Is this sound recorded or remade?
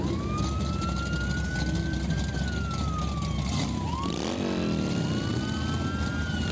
recorded